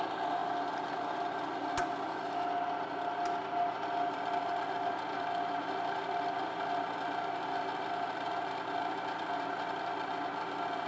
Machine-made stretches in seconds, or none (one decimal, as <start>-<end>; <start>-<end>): none